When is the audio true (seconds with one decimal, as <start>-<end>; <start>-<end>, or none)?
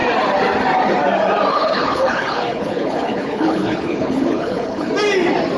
0.0-1.5; 4.9-5.6